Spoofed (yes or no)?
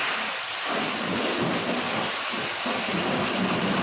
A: no